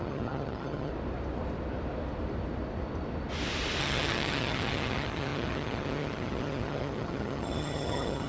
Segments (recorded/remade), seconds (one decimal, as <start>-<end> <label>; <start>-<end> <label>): 0.0-0.9 remade; 0.9-3.8 recorded; 3.8-8.3 remade